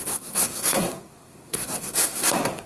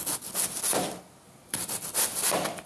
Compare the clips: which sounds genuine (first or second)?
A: second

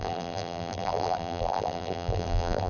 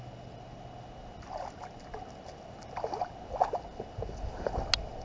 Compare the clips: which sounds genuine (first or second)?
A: second